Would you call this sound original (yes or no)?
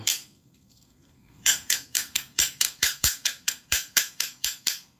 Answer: no